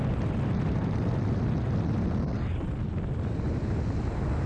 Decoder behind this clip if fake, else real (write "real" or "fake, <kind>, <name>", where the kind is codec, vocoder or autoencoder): real